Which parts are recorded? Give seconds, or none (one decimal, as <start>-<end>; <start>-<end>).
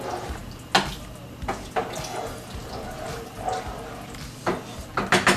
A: 0.0-5.4